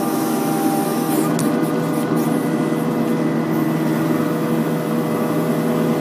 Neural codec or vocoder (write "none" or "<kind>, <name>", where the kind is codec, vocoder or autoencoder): none